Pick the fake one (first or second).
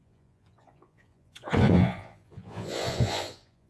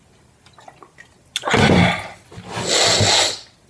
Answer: first